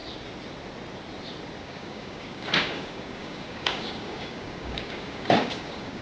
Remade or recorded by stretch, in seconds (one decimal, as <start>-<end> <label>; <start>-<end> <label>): 0.0-1.6 recorded; 1.6-6.0 remade